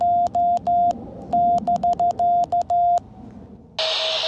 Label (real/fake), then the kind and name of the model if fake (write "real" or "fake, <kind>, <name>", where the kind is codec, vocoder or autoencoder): real